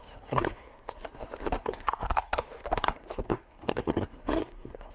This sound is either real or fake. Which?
fake